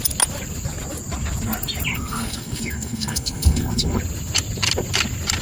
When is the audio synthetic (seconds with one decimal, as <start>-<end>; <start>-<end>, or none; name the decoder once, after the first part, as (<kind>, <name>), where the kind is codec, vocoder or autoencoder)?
1.9-4.0 (codec, SNAC)